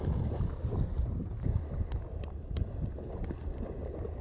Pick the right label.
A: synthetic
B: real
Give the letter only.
B